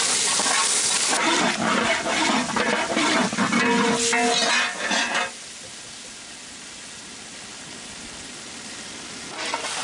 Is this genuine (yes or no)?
yes